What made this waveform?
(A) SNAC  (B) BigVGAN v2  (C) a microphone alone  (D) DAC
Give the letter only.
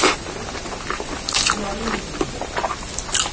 C